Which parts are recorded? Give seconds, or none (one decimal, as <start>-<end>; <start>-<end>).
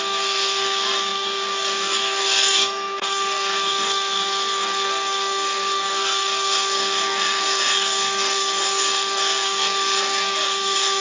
none